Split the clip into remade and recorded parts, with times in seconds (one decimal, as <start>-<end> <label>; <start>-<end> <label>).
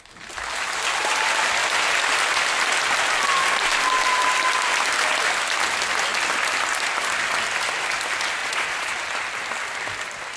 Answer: 0.0-8.4 recorded; 8.4-8.9 remade; 8.9-10.4 recorded